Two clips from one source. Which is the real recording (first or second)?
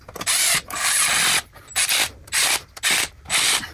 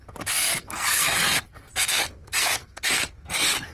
first